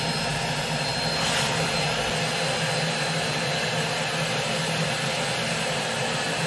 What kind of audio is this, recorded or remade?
recorded